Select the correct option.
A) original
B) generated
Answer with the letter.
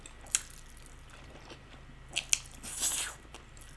A